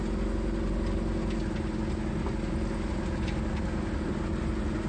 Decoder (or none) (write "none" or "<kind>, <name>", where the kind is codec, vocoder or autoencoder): none